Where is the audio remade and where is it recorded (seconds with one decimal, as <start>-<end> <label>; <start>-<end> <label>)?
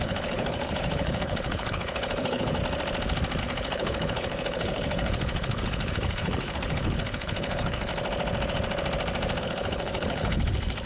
0.0-2.6 remade; 2.6-3.4 recorded; 3.4-7.9 remade; 7.9-9.4 recorded; 9.4-10.9 remade